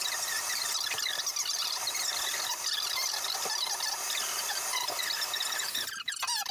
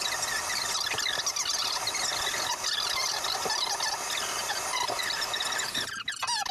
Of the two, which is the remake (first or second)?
first